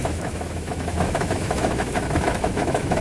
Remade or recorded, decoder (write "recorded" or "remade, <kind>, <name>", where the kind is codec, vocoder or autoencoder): remade, autoencoder, DAC-VAE